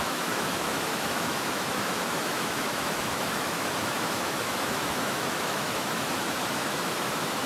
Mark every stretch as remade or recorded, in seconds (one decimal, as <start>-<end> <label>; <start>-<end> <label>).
0.0-7.5 remade